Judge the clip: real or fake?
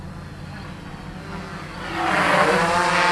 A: real